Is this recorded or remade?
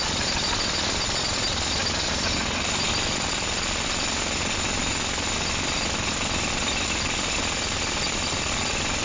recorded